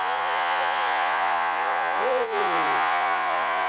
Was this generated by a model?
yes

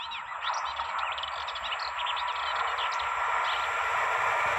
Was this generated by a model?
yes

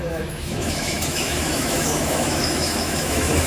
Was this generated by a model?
yes